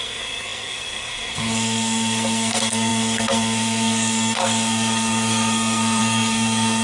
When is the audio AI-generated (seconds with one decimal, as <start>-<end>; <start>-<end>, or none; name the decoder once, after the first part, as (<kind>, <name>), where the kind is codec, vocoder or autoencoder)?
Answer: 0.0-6.8 (codec, SNAC)